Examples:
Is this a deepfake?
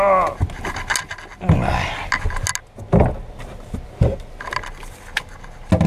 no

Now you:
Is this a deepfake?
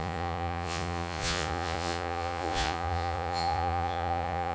yes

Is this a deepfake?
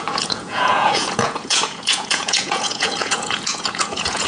yes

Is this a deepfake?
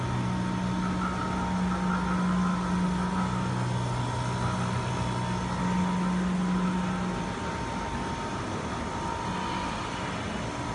no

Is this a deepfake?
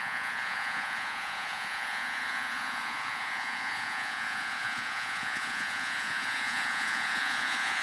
yes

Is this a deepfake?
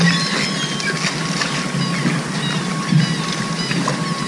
no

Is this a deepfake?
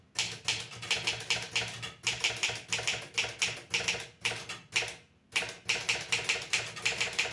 no